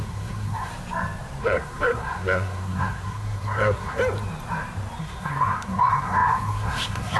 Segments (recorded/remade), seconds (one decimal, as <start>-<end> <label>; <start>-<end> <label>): 0.0-0.7 remade; 0.7-1.4 recorded; 1.4-4.0 remade; 4.0-5.0 recorded; 5.0-7.2 remade